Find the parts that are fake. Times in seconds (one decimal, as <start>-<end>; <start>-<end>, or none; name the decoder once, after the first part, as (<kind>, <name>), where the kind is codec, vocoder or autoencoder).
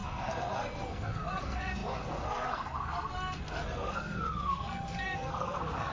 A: 0.0-5.9 (codec, SNAC)